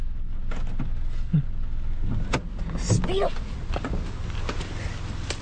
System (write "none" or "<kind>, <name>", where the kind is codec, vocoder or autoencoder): none